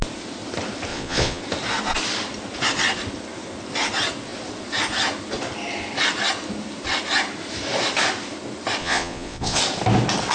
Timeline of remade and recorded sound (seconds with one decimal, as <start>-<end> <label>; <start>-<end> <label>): 0.0-0.9 recorded; 0.9-1.4 remade; 1.4-8.8 recorded; 8.8-9.6 remade; 9.6-10.3 recorded

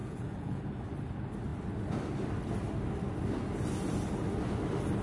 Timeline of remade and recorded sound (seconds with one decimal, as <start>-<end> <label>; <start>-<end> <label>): 0.0-0.6 remade; 0.6-5.0 recorded